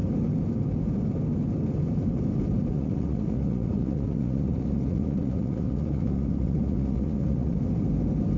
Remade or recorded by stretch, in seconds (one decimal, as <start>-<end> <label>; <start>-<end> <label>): 0.0-2.7 recorded; 2.7-7.6 remade; 7.6-8.4 recorded